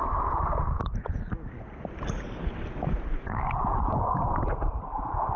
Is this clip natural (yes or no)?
yes